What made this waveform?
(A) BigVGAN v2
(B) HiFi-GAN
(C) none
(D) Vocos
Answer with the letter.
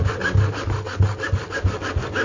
C